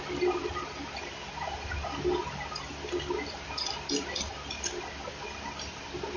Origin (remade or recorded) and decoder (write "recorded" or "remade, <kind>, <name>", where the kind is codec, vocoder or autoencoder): recorded